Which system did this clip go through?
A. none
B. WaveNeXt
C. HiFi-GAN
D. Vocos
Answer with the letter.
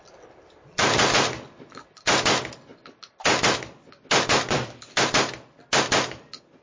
A